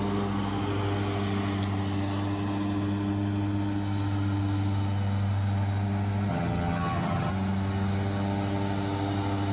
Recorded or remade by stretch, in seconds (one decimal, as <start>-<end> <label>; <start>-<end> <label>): 0.0-6.3 recorded; 6.3-7.3 remade; 7.3-9.5 recorded